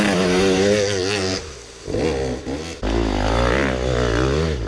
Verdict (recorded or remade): recorded